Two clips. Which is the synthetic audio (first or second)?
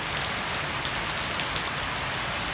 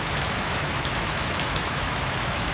second